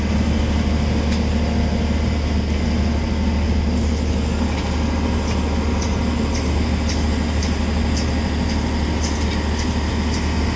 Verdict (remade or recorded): recorded